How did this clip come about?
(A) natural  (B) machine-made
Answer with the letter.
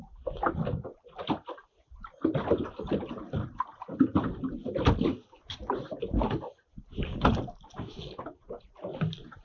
A